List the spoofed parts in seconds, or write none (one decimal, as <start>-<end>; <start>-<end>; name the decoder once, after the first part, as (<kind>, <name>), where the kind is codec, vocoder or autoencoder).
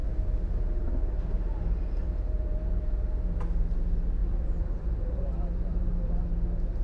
0.0-3.4 (vocoder, BigVGAN v2); 4.2-6.2